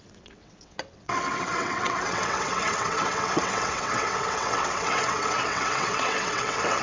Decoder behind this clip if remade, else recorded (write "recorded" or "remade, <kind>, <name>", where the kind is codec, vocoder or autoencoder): remade, vocoder, WaveNeXt